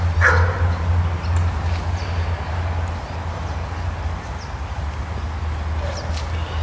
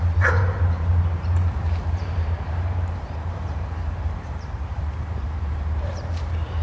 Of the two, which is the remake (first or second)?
second